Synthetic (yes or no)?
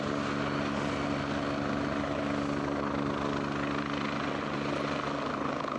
no